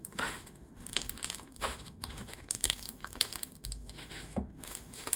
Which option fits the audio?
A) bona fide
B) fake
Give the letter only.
B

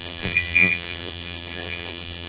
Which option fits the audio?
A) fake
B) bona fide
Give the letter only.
A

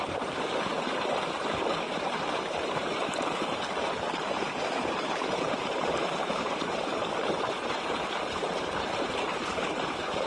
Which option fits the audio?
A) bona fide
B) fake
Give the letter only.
B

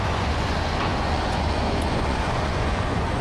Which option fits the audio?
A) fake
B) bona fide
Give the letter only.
A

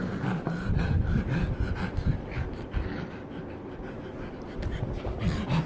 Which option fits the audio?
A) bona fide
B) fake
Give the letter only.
A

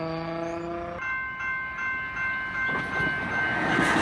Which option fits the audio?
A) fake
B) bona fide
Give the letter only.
B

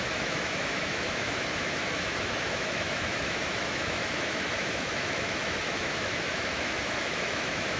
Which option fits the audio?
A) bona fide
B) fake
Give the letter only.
B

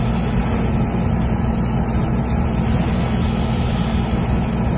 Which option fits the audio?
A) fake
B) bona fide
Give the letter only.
B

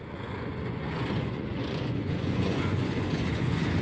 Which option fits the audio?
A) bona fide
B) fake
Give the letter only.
B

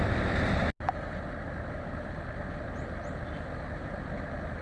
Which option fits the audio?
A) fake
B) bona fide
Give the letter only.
B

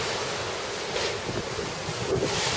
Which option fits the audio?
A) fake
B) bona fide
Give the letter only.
B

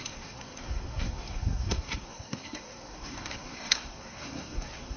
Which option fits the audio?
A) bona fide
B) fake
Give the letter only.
B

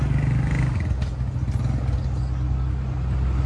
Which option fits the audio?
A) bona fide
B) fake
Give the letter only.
A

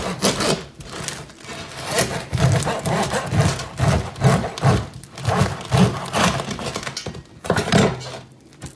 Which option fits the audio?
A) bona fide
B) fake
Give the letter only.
A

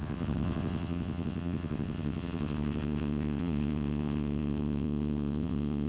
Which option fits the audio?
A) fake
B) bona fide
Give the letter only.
A